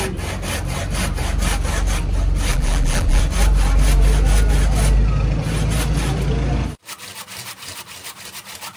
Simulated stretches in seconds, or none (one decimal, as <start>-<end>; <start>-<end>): 2.5-3.2